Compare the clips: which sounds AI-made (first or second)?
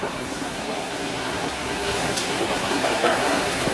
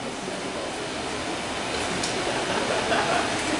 first